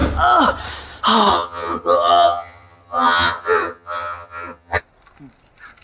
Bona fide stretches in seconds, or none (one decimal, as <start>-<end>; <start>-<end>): 0.0-1.3; 4.8-5.8